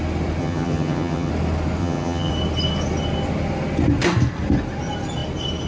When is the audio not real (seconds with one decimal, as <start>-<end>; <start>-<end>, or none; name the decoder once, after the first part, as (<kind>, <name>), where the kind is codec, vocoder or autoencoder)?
0.4-1.3 (vocoder, HiFi-GAN); 1.8-2.3

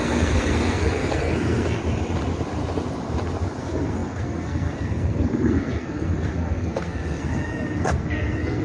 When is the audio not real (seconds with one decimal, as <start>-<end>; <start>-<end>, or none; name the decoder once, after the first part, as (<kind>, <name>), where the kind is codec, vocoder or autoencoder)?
0.0-1.8 (codec, SNAC); 3.6-8.6

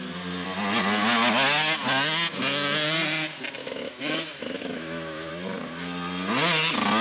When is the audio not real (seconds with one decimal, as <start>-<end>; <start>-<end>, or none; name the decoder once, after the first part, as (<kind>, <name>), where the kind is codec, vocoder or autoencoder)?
3.6-5.3 (autoencoder, DAC-VAE)